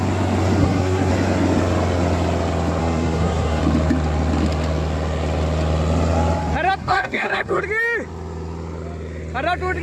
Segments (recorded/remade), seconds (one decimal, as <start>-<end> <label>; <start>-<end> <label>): 0.0-0.6 recorded; 0.6-1.1 remade; 1.1-2.8 recorded; 2.8-3.6 remade; 3.6-6.8 recorded; 6.8-7.6 remade; 7.6-9.8 recorded